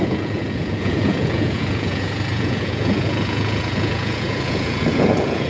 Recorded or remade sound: remade